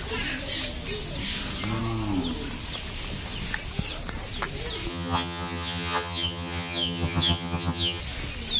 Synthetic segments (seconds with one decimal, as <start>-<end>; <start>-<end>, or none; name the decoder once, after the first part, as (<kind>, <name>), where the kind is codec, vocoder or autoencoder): 4.9-8.0 (vocoder, HiFi-GAN)